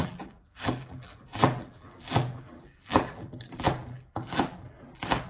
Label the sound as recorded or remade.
remade